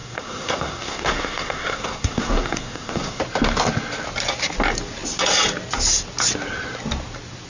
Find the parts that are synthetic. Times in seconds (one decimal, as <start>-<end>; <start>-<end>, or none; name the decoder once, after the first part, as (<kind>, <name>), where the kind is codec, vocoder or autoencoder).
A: 0.0-3.2 (codec, SNAC)